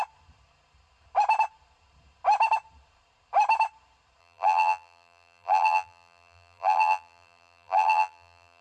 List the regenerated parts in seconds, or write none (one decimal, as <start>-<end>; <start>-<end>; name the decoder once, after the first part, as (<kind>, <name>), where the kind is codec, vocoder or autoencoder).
4.2-8.6 (vocoder, BigVGAN v2)